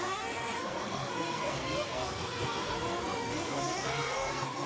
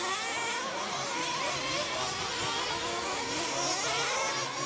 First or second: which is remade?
first